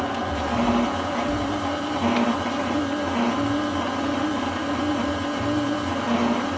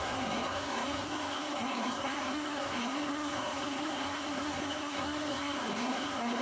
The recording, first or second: first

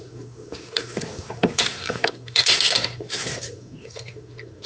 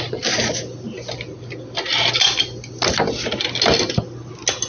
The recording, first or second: second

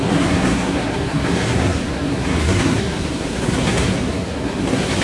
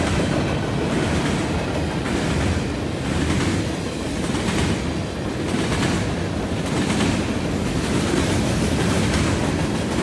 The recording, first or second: second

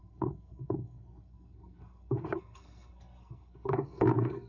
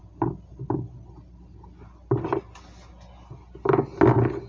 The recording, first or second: second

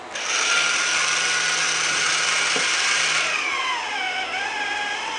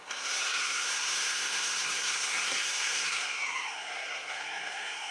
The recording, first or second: first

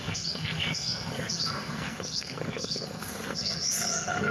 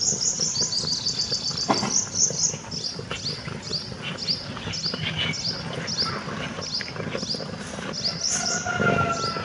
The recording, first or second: second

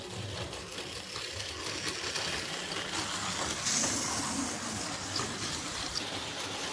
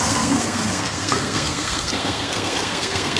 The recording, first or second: first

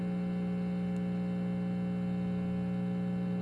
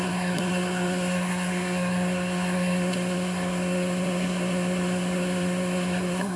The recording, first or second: first